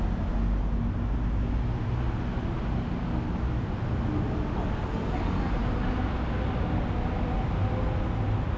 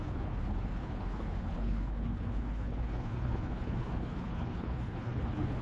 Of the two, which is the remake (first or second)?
second